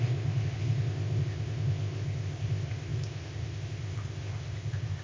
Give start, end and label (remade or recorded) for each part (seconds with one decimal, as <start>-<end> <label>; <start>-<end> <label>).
0.0-5.0 remade